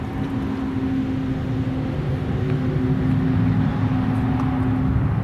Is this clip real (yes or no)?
yes